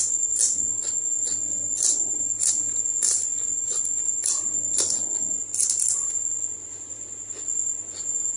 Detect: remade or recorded recorded